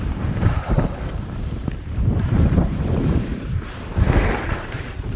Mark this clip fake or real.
fake